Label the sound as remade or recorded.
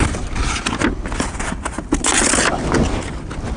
recorded